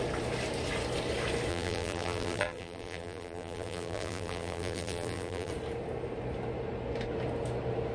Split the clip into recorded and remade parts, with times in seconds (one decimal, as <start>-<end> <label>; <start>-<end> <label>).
0.0-1.5 recorded; 1.5-5.5 remade; 5.5-7.9 recorded